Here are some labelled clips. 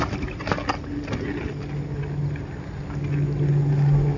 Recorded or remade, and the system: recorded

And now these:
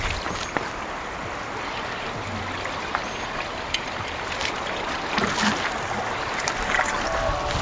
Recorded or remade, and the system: recorded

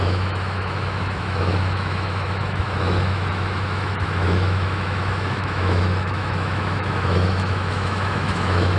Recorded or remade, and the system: remade, autoencoder, DAC-VAE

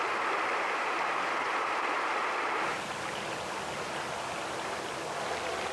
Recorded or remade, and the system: recorded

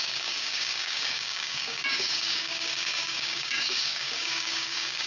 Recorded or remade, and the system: remade, codec, DAC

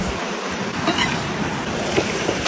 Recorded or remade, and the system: recorded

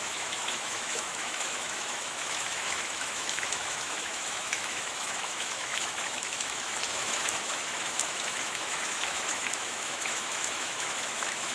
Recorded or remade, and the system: remade, autoencoder, DAC-VAE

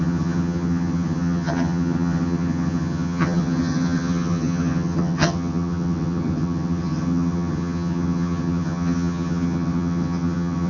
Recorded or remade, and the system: remade, vocoder, HiFi-GAN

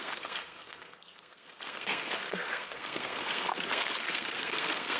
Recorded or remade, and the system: remade, codec, SNAC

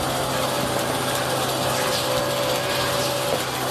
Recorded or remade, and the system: recorded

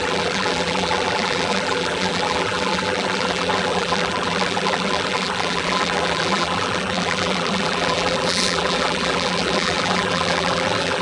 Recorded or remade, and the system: remade, vocoder, BigVGAN v2